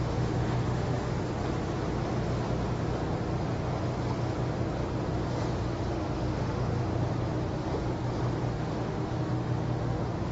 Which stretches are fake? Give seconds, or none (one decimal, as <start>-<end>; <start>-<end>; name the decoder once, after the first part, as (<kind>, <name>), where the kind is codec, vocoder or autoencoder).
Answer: 0.0-1.1 (autoencoder, DAC-VAE); 5.9-6.9; 8.5-10.3